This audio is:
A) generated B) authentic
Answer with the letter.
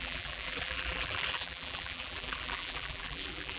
A